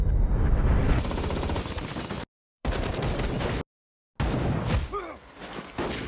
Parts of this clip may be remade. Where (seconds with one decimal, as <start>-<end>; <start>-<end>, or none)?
2.4-3.4